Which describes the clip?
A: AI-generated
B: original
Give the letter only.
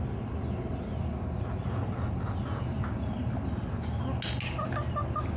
B